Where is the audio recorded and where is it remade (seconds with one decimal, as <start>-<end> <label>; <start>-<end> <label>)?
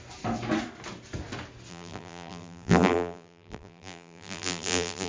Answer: 0.0-1.7 recorded; 1.7-5.1 remade